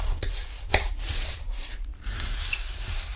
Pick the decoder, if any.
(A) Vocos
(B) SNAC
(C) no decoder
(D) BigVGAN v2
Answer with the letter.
D